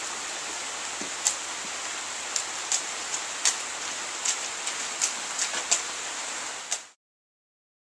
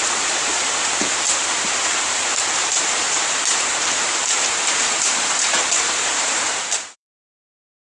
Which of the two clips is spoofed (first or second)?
second